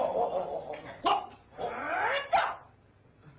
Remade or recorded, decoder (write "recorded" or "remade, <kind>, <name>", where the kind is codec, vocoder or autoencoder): recorded